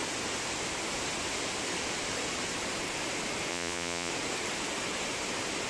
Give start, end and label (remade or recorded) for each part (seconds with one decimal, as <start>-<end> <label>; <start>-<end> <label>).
0.0-3.5 recorded; 3.5-4.1 remade; 4.1-5.7 recorded